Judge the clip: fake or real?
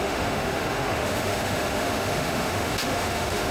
fake